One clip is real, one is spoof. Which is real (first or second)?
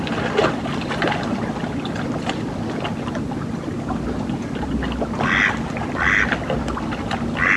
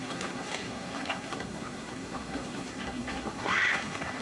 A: first